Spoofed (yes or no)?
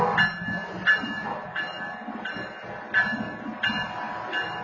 no